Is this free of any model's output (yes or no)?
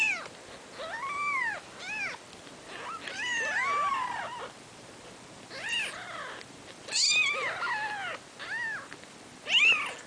yes